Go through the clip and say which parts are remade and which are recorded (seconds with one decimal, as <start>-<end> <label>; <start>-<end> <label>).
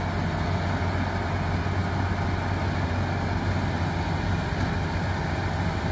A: 0.0-5.9 recorded